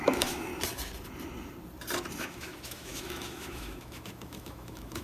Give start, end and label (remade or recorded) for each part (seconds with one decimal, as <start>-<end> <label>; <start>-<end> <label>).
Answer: 0.0-0.5 remade; 0.5-2.2 recorded; 2.2-5.0 remade